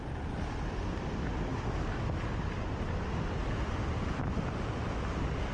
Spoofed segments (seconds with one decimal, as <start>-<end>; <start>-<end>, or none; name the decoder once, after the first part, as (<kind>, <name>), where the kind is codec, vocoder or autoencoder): none